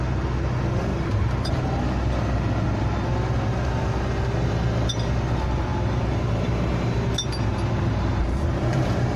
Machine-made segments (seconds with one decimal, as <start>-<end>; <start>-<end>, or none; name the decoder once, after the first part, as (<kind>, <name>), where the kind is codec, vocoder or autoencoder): 0.9-1.5 (vocoder, BigVGAN v2); 5.7-6.4; 7.5-9.2